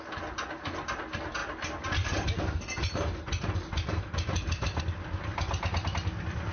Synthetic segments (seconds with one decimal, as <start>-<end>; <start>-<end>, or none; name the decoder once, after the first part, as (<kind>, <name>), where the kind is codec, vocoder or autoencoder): none